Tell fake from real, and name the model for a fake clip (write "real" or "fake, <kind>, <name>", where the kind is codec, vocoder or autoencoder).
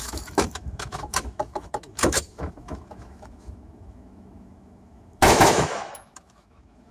fake, autoencoder, DAC-VAE